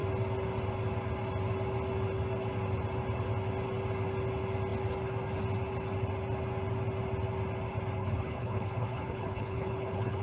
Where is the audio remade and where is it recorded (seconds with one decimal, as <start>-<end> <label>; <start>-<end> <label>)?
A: 0.0-8.0 recorded; 8.0-10.2 remade